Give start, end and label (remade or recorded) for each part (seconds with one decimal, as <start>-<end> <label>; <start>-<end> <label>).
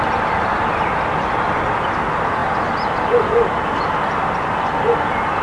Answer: 0.0-5.4 recorded